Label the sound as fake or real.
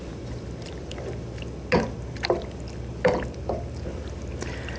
real